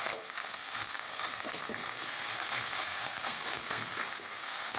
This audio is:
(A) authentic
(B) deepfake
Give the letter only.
B